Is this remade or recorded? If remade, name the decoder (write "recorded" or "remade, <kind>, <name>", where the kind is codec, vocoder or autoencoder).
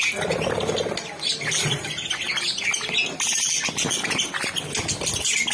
recorded